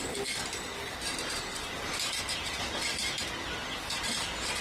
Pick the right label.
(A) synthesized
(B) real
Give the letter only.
B